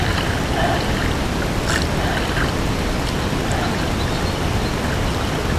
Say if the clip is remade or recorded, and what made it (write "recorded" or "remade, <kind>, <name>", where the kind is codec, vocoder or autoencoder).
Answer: recorded